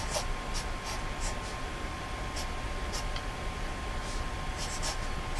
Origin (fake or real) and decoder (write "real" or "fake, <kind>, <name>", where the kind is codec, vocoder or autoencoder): real